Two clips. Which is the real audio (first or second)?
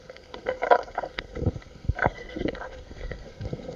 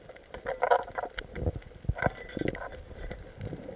second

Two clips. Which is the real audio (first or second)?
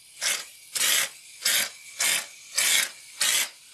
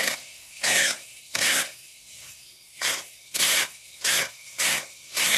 first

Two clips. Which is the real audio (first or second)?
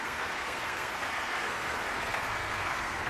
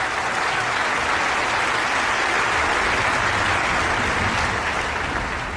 second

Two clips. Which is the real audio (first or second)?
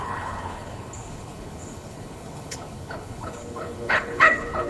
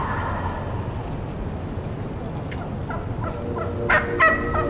second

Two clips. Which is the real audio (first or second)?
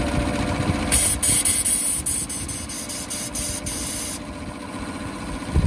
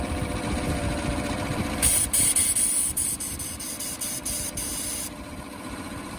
first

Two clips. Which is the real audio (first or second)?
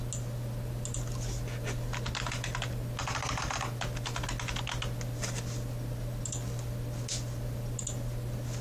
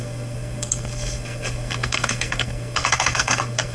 first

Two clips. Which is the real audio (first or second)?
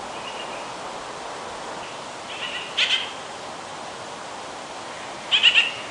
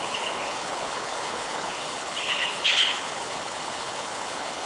first